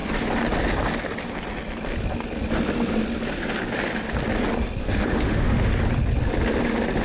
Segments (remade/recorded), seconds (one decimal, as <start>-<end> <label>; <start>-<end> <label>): 0.0-4.8 recorded; 4.8-5.7 remade; 5.7-7.0 recorded